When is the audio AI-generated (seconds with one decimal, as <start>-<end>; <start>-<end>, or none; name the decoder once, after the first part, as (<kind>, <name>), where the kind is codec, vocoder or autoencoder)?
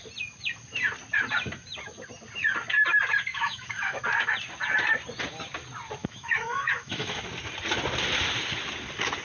3.3-4.0 (autoencoder, DAC-VAE); 6.0-7.2